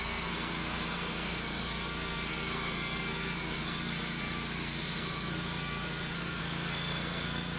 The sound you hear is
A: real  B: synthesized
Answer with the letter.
B